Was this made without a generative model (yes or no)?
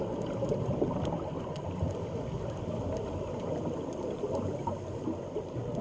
yes